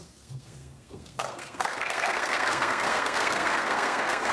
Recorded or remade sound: remade